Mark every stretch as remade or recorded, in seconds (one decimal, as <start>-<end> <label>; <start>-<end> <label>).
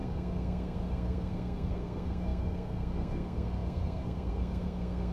0.0-5.1 remade